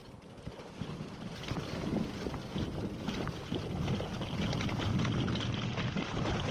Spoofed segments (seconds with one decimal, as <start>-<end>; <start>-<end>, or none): none